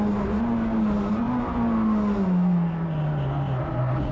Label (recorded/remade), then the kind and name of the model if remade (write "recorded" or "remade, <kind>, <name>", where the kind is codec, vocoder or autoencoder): recorded